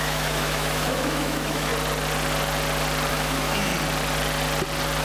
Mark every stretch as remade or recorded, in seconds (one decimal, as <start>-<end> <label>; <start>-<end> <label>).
0.0-1.7 remade; 1.7-3.1 recorded; 3.1-3.7 remade; 3.7-5.0 recorded